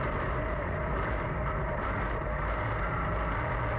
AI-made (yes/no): yes